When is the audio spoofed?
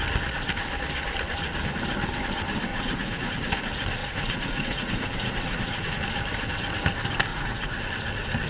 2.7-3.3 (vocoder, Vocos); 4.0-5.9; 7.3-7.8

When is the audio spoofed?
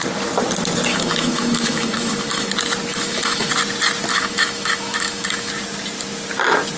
0.9-2.5 (autoencoder, DAC-VAE); 2.9-3.5; 4.1-5.5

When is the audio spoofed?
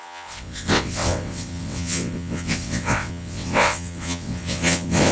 0.0-5.1 (vocoder, WaveNeXt)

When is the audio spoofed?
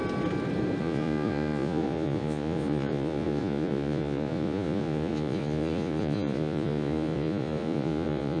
0.8-8.4 (vocoder, Vocos)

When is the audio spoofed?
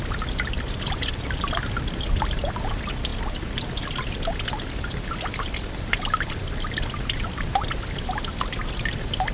none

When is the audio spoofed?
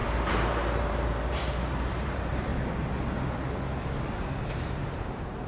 0.0-2.5 (vocoder, BigVGAN v2); 4.4-5.5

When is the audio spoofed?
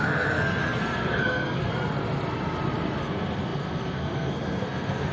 0.0-1.7 (codec, SNAC); 3.0-5.1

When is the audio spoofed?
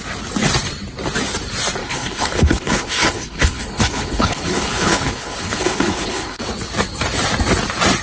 1.8-6.4 (codec, HILCodec)